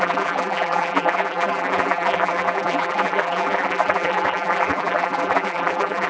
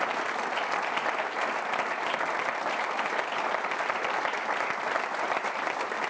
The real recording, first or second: second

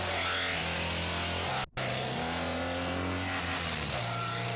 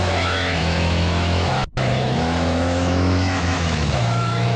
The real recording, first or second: first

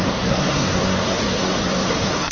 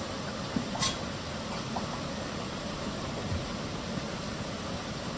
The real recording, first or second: second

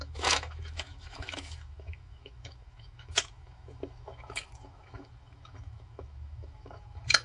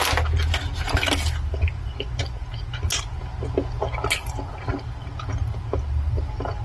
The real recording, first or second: second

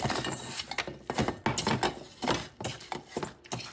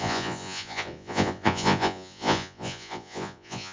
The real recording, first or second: first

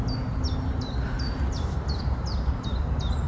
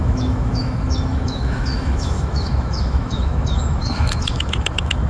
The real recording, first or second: first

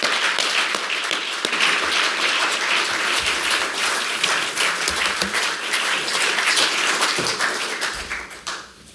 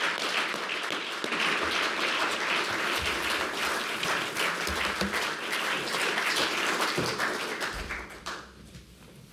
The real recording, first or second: second